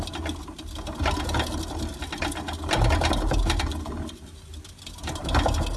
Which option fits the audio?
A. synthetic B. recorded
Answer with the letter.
B